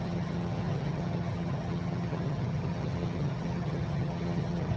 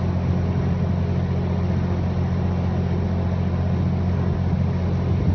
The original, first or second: second